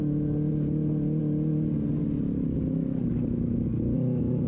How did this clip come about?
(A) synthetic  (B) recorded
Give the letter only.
B